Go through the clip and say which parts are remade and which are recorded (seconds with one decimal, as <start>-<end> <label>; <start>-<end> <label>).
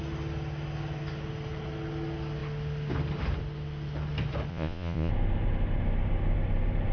0.0-4.5 recorded; 4.5-5.1 remade; 5.1-6.9 recorded